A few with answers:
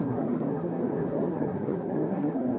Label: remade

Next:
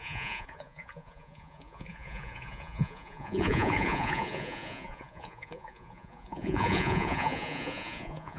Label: remade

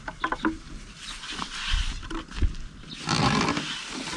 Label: recorded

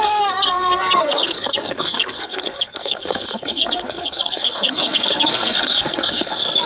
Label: remade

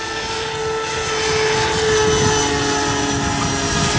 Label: recorded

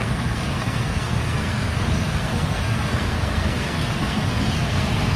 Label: remade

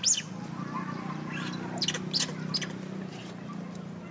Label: recorded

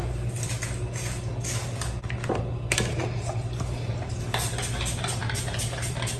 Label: recorded